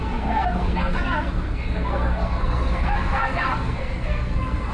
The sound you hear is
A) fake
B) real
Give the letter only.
A